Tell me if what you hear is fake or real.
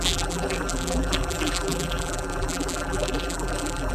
fake